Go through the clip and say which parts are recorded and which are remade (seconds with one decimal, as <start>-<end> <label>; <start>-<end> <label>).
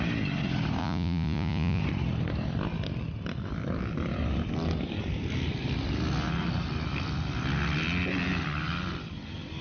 0.0-0.8 recorded; 0.8-1.8 remade; 1.8-9.6 recorded